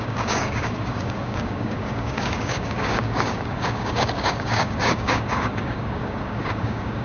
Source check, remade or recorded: remade